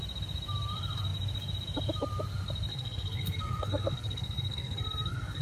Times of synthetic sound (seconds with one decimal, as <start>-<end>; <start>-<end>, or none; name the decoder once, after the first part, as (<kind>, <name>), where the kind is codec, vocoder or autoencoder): 2.7-5.4 (codec, SNAC)